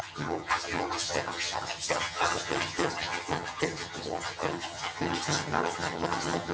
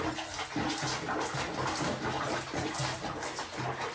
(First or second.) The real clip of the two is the second